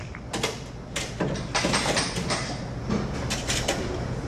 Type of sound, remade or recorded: recorded